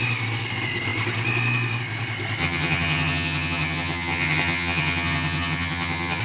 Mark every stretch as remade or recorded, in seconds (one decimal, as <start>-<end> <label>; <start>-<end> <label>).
0.0-2.4 recorded; 2.4-6.2 remade